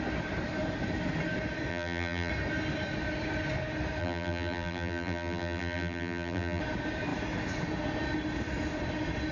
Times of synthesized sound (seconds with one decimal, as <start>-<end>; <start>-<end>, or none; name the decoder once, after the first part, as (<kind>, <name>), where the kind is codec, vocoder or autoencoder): 1.7-2.3 (vocoder, BigVGAN v2); 4.0-6.6